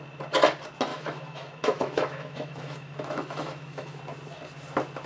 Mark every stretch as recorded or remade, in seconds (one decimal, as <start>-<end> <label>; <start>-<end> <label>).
0.0-0.9 recorded; 0.9-4.0 remade; 4.0-5.1 recorded